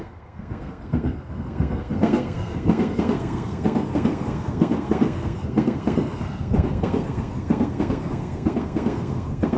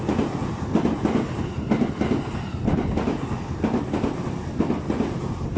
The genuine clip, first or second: second